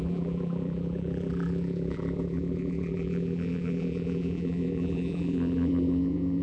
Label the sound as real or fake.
fake